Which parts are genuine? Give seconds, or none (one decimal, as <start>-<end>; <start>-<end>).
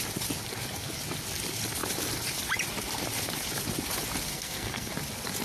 0.0-4.3; 4.9-5.4